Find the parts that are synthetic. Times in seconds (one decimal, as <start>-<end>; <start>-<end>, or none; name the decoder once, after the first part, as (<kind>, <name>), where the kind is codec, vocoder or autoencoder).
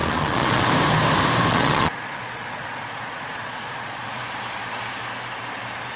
0.0-0.7 (vocoder, Vocos); 1.5-4.2